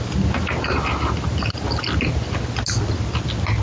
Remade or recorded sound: recorded